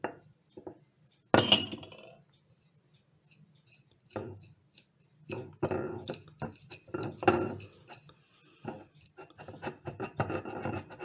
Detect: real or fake real